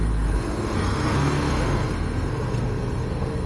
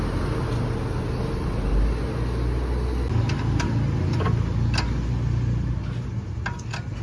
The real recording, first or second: second